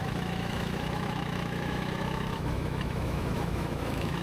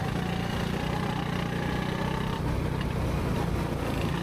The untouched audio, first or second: second